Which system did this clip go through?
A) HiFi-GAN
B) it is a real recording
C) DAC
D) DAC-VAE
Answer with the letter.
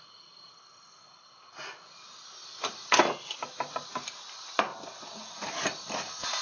B